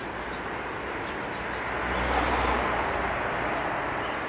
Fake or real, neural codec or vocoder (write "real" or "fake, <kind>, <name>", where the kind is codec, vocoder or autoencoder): real